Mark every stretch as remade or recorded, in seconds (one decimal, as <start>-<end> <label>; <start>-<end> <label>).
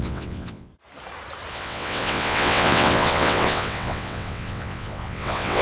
0.0-0.7 remade; 0.7-1.5 recorded; 1.5-5.6 remade